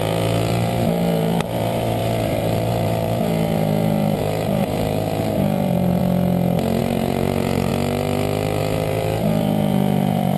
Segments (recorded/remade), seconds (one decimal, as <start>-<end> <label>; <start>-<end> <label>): 0.0-6.0 remade; 6.0-6.8 recorded; 6.8-7.7 remade; 7.7-8.6 recorded; 8.6-10.4 remade